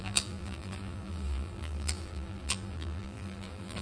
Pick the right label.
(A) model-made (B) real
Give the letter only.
A